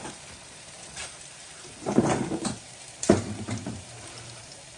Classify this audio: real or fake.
fake